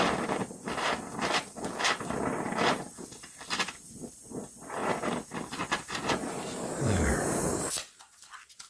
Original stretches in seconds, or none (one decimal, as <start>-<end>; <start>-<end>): none